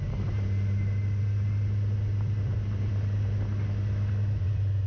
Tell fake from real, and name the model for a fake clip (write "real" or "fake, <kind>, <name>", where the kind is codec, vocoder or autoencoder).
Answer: real